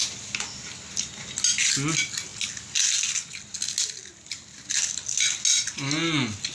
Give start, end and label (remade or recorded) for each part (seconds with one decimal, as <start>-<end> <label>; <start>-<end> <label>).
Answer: 0.0-6.5 recorded